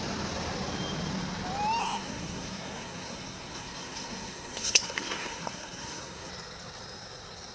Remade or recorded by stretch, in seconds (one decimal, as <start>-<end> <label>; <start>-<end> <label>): 0.0-1.8 recorded; 1.8-6.3 remade; 6.3-7.5 recorded